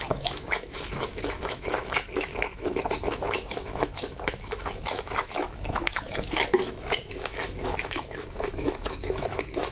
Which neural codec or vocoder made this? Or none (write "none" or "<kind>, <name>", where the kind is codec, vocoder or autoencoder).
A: autoencoder, DAC-VAE